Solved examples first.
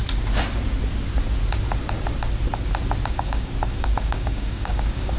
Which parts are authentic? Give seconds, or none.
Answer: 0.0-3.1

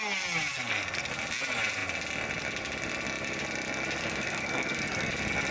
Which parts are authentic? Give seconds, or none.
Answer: 0.0-0.5; 1.1-4.0; 5.1-5.5

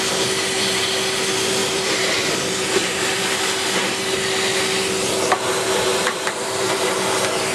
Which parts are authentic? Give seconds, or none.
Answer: 0.0-1.6; 2.2-2.8; 3.4-5.9; 6.8-7.5

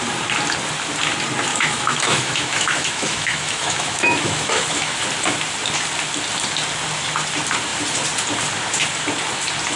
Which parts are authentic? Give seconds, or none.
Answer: 0.0-1.5; 5.0-9.8

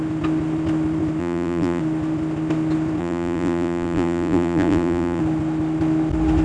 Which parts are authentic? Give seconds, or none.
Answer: 0.0-1.2; 1.8-3.0; 5.2-6.4

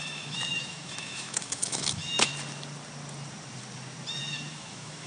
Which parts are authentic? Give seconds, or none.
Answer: 2.3-4.5

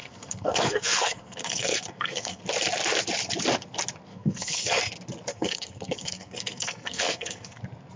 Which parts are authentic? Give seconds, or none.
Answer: 2.4-4.1; 4.8-5.3; 7.6-8.0